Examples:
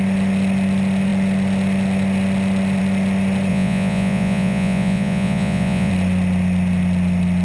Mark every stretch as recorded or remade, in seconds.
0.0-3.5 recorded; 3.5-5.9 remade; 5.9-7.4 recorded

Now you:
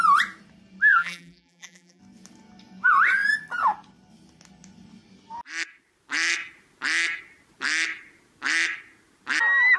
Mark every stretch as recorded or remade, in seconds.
0.0-0.9 recorded; 0.9-2.0 remade; 2.0-9.8 recorded

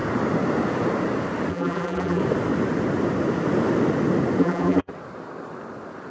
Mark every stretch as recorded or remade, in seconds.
0.0-1.5 recorded; 1.5-2.2 remade; 2.2-4.4 recorded; 4.4-4.9 remade; 4.9-6.1 recorded

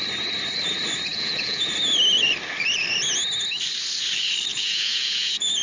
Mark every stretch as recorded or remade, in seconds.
0.0-1.1 recorded; 1.1-1.7 remade; 1.7-4.5 recorded; 4.5-5.6 remade

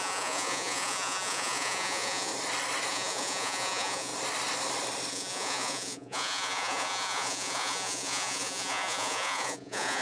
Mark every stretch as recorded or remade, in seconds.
0.0-2.3 remade; 2.3-2.9 recorded; 2.9-4.1 remade; 4.1-5.1 recorded; 5.1-10.0 remade